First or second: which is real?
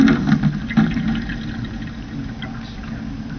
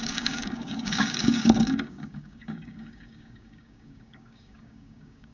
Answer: first